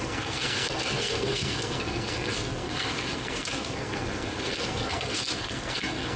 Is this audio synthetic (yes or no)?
yes